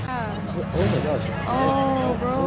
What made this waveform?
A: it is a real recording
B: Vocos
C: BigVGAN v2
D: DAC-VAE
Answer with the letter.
A